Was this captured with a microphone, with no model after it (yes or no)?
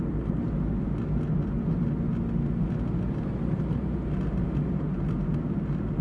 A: yes